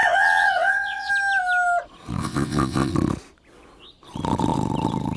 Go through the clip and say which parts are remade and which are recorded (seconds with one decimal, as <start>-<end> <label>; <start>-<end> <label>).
0.0-1.1 remade; 1.1-2.2 recorded; 2.2-2.9 remade; 2.9-5.2 recorded